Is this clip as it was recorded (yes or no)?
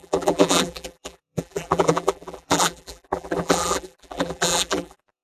no